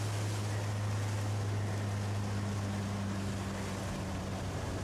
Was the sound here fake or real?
real